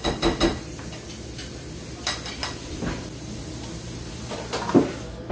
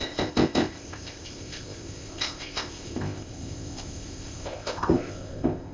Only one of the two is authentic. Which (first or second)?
first